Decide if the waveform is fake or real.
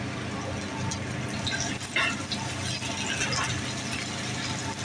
real